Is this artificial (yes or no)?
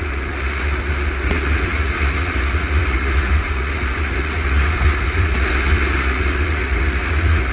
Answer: yes